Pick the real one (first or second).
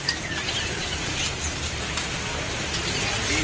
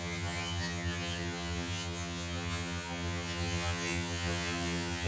first